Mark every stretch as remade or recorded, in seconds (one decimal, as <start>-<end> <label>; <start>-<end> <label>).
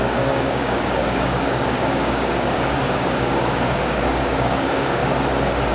0.0-5.0 remade; 5.0-5.7 recorded